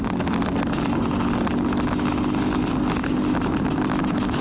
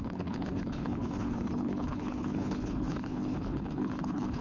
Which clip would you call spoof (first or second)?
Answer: second